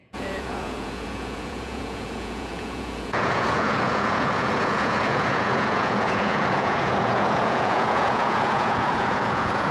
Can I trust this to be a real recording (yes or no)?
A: no